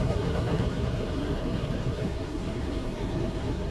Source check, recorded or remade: remade